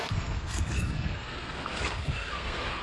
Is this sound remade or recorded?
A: remade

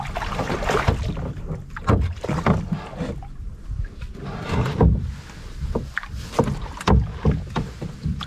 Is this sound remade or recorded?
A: recorded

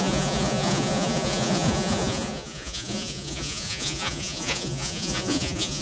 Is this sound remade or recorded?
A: remade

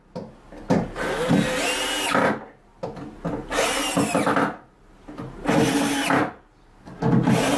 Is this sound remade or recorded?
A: recorded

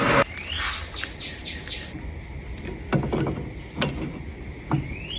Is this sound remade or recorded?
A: recorded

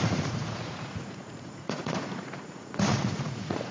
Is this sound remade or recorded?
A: remade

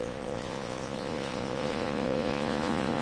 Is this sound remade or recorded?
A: remade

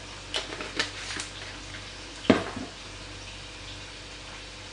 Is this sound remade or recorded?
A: recorded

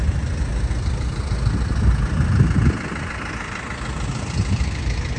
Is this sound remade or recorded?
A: recorded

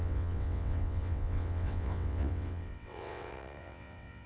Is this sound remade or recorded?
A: remade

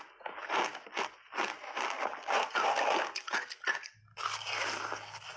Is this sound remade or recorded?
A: recorded